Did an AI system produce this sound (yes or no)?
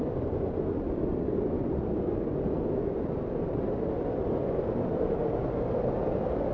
no